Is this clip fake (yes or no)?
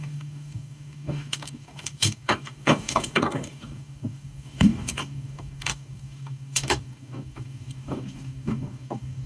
yes